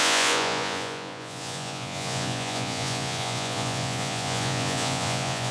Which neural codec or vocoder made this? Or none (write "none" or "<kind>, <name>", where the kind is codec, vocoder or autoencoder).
vocoder, Vocos